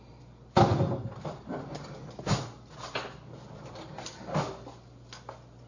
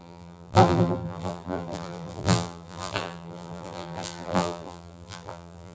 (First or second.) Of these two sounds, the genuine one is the first